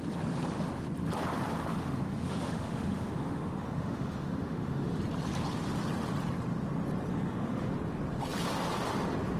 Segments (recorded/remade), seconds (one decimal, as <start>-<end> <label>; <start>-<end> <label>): 0.0-1.7 recorded; 1.7-5.0 remade; 5.0-7.1 recorded; 7.1-7.7 remade; 7.7-9.4 recorded